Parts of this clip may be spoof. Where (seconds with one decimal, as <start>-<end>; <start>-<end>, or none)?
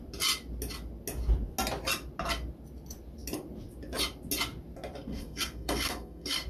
5.1-6.5